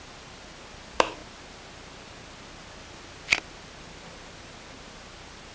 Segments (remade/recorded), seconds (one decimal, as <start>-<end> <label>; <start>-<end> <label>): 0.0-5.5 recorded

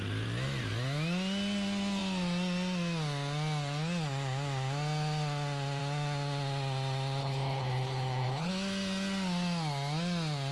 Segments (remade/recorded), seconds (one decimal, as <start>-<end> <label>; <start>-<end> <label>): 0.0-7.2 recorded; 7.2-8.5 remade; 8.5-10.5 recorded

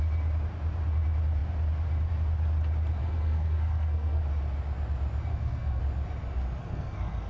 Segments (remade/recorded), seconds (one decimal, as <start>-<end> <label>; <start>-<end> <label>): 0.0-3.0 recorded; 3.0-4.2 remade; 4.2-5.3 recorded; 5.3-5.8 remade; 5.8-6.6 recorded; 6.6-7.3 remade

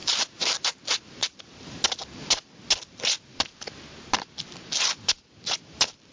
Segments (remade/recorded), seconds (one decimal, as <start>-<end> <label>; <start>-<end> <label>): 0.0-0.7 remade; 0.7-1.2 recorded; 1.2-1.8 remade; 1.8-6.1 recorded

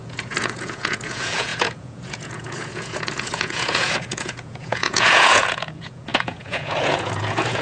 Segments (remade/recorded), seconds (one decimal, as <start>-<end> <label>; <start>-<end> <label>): 0.0-7.6 remade

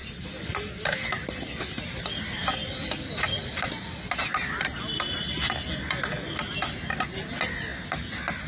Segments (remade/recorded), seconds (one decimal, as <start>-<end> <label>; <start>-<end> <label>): 0.0-8.5 recorded

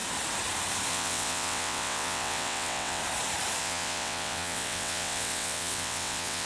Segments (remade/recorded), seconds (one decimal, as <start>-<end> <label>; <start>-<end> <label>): 0.0-0.9 recorded; 0.9-3.0 remade; 3.0-3.6 recorded; 3.6-6.5 remade